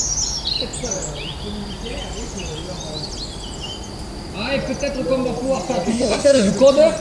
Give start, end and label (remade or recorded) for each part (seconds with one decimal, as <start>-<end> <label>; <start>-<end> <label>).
0.0-5.9 recorded; 5.9-6.5 remade; 6.5-7.0 recorded